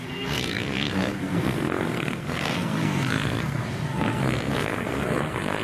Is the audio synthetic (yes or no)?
yes